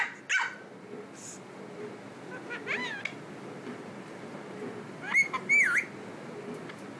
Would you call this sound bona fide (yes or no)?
yes